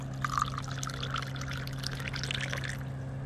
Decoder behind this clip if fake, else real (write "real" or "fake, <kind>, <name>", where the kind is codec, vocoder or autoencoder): real